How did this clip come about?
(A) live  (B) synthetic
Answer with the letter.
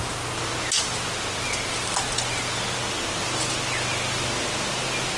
A